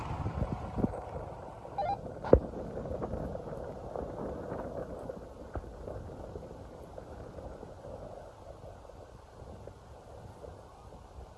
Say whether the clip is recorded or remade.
recorded